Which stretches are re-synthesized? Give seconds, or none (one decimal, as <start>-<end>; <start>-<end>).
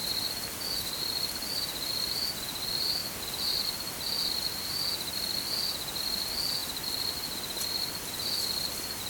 0.0-1.0; 3.0-3.6